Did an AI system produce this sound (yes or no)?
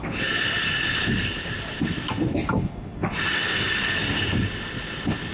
no